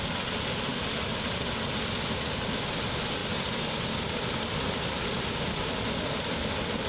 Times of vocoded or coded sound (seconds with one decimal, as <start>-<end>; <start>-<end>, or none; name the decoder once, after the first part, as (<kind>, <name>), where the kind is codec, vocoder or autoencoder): 3.2-6.5 (vocoder, BigVGAN v2)